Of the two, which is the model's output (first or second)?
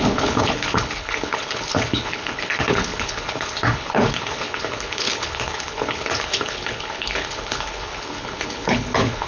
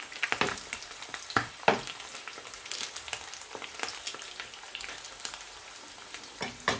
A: first